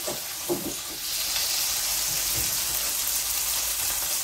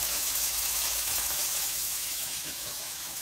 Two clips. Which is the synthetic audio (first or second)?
second